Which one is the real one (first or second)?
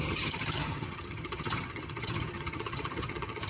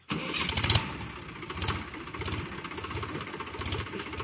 second